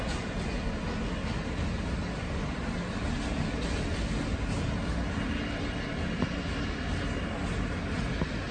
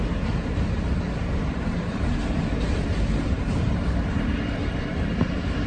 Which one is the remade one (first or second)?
second